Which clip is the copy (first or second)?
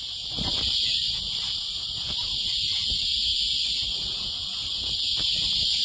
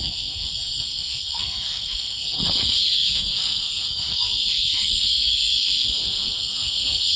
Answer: second